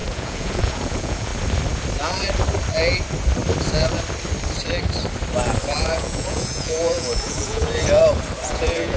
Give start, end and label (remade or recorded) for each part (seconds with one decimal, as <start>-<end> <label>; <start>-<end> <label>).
0.0-1.3 remade; 1.3-5.8 recorded; 5.8-8.0 remade; 8.0-8.5 recorded; 8.5-9.0 remade